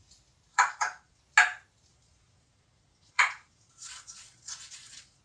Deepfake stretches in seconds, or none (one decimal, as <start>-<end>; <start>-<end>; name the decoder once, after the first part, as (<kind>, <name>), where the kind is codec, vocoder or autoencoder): 0.5-1.2 (vocoder, Vocos); 1.9-5.2